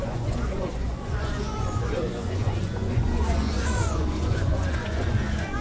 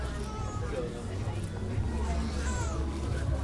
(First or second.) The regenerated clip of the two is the first